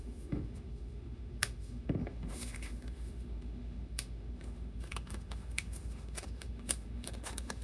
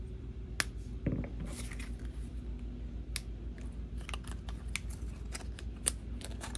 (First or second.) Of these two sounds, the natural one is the second